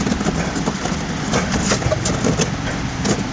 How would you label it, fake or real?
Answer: real